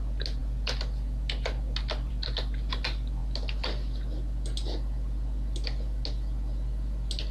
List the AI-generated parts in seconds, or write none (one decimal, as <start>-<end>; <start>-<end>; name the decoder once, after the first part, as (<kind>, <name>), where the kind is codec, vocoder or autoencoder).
none